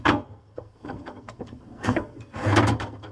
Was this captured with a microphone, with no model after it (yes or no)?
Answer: no